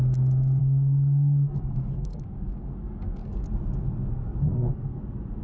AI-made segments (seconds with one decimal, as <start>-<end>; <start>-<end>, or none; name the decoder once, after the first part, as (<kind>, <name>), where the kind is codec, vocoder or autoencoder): 0.6-3.4 (codec, SNAC); 4.1-5.0